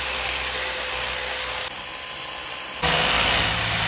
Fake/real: real